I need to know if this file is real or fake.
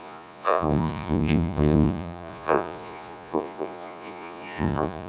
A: fake